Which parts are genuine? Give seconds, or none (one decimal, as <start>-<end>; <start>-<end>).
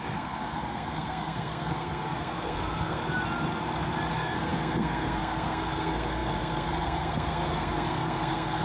3.0-4.1